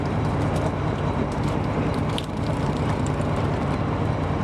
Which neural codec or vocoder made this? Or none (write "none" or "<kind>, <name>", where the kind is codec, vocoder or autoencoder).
vocoder, BigVGAN v2